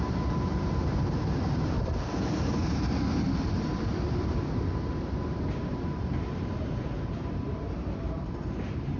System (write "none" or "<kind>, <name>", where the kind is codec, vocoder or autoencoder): vocoder, BigVGAN v2